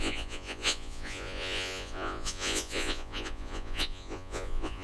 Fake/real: fake